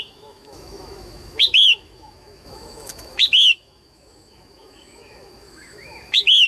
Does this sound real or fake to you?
fake